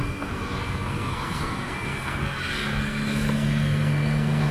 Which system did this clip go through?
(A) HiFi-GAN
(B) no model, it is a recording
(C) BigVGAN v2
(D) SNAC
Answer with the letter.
D